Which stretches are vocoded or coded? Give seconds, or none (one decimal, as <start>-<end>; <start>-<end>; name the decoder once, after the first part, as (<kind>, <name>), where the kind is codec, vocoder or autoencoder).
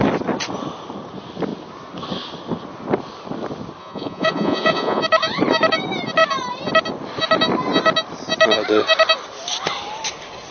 3.8-5.0 (vocoder, Vocos)